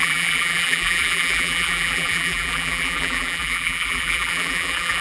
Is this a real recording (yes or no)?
no